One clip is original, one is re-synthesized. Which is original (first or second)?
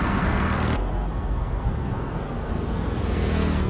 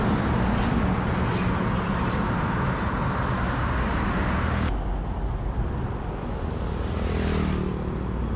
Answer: second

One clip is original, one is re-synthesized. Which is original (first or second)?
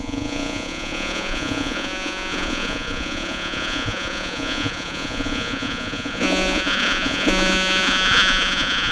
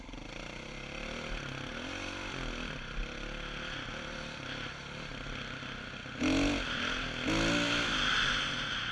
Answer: second